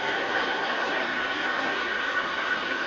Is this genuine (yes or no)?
no